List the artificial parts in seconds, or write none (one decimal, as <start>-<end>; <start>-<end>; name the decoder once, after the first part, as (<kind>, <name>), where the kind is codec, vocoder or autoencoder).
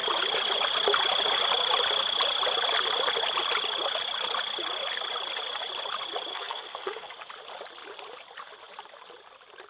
6.3-7.1 (codec, SNAC)